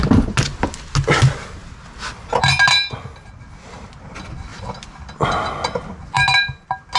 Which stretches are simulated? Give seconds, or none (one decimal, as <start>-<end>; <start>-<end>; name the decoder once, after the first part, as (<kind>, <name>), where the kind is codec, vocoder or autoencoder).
none